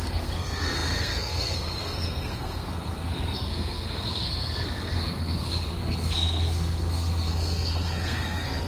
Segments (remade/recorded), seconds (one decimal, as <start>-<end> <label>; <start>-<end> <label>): 0.0-8.7 remade

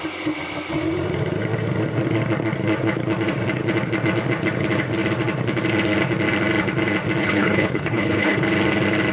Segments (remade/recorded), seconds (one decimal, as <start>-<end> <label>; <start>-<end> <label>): 0.0-7.2 recorded; 7.2-8.4 remade; 8.4-9.1 recorded